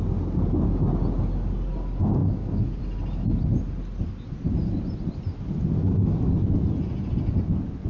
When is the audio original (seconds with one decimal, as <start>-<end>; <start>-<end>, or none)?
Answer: 0.0-2.2; 2.8-7.9

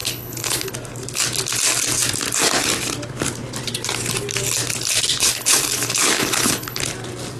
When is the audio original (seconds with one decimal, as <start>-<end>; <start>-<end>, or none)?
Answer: 0.7-5.2; 6.8-7.4

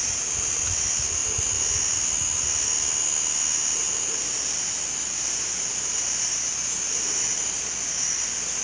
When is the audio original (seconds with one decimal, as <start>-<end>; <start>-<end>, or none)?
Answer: 0.0-8.6

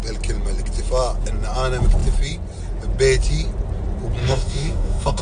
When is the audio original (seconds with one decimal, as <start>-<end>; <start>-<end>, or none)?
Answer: 0.0-4.2

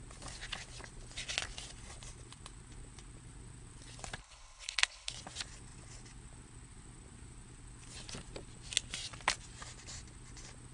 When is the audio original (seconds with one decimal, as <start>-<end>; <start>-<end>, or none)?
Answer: 0.0-4.2; 5.1-10.7

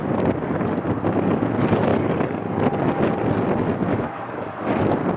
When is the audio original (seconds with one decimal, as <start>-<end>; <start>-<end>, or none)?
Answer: 0.0-1.9; 2.6-3.9; 4.7-5.2

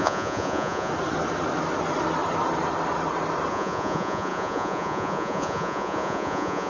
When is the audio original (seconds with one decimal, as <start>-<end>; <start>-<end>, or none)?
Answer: 0.9-3.5